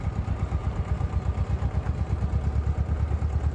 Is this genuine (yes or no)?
yes